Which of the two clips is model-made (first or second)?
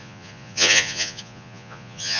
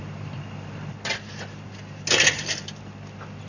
first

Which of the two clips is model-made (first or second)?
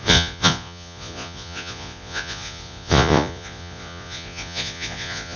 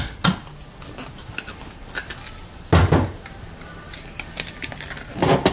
first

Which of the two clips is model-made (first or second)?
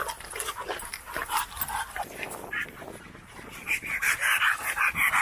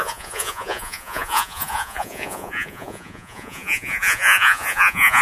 second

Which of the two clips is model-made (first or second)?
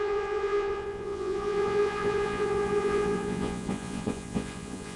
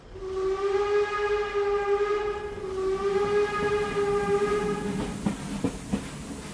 first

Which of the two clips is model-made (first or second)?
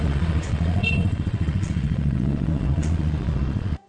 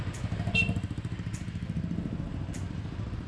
first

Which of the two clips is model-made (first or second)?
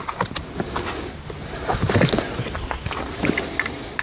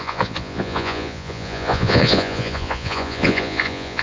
second